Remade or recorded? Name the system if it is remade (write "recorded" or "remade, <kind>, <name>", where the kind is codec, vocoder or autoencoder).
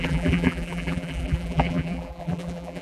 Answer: remade, vocoder, BigVGAN v2